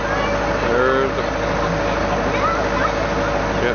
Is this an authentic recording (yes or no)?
yes